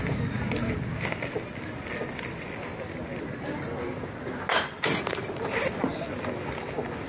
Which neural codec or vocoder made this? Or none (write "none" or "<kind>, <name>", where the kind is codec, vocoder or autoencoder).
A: none